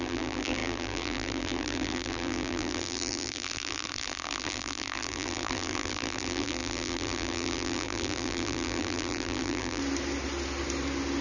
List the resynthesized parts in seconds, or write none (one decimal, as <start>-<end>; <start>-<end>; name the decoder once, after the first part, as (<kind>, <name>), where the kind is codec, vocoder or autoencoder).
0.0-9.8 (vocoder, BigVGAN v2)